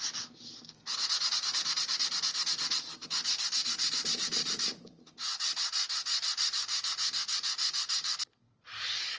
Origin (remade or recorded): recorded